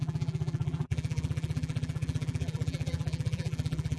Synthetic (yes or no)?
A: yes